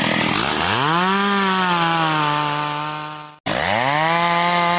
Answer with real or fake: real